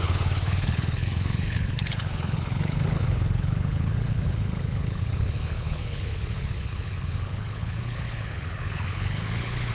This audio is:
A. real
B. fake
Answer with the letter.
B